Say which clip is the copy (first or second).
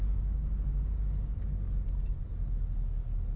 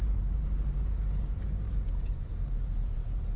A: second